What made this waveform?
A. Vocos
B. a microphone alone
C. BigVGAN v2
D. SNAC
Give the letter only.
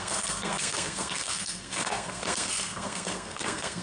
D